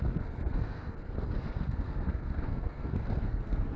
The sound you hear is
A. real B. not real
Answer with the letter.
B